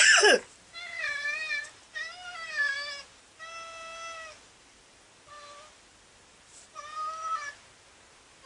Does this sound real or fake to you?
real